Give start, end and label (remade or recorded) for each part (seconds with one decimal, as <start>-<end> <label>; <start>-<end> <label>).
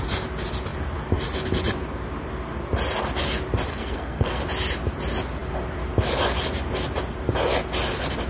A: 0.0-3.7 recorded; 3.7-4.4 remade; 4.4-8.3 recorded